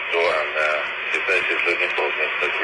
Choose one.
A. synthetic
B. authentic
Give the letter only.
B